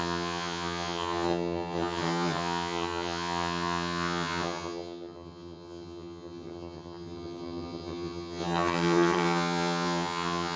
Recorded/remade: remade